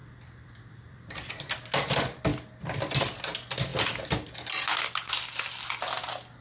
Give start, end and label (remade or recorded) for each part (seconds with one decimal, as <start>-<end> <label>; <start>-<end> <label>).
0.0-1.3 remade; 1.3-6.4 recorded